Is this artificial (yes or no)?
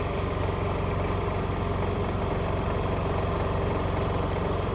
no